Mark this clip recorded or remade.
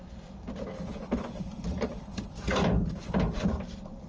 remade